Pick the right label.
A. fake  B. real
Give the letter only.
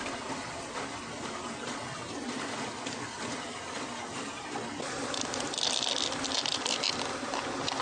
B